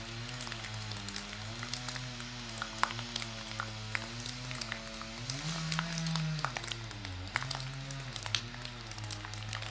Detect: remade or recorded recorded